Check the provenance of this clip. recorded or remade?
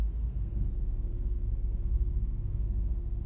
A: remade